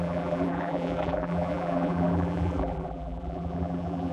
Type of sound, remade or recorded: remade